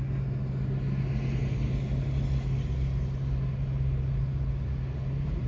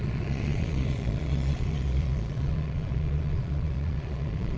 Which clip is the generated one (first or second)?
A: second